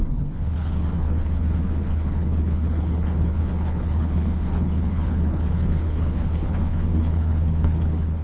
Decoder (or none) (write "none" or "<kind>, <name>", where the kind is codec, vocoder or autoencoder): codec, HILCodec